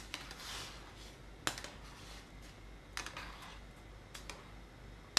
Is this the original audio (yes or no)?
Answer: yes